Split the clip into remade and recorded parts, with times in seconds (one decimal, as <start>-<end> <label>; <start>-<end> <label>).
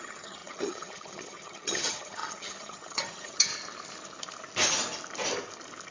0.0-3.5 remade; 3.5-5.9 recorded